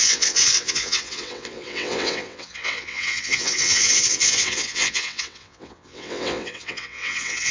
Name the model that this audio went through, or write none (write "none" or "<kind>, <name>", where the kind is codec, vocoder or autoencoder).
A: vocoder, WaveNeXt